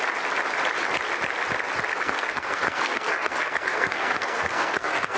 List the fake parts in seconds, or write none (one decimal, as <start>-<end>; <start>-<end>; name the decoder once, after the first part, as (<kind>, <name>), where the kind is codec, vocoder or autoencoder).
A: 1.9-5.2 (codec, SNAC)